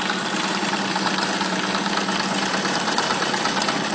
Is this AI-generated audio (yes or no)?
yes